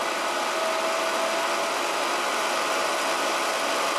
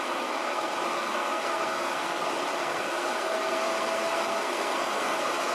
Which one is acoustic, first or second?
first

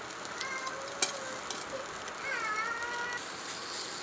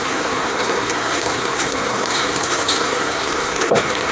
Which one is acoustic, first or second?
first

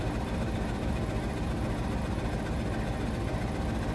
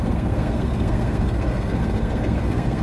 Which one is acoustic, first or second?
first